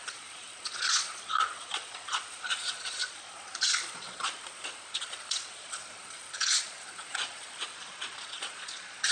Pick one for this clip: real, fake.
fake